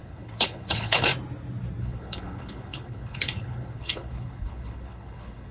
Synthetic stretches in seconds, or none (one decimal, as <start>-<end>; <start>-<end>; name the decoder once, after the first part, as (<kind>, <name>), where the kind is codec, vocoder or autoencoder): 0.0-1.1 (codec, HILCodec); 1.8-5.5